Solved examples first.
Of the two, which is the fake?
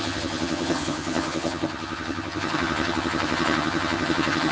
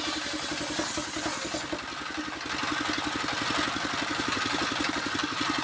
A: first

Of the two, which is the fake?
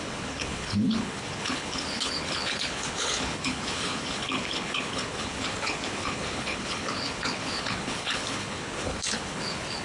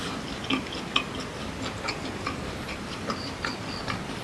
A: first